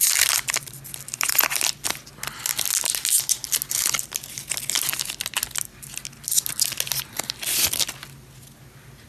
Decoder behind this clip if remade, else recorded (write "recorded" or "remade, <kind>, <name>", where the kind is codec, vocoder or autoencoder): recorded